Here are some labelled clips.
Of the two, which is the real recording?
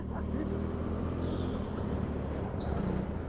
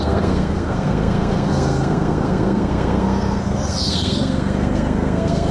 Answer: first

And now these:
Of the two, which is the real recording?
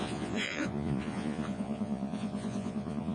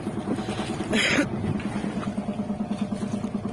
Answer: second